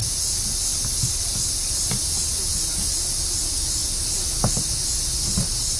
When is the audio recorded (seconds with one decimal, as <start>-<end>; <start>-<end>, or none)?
0.0-5.8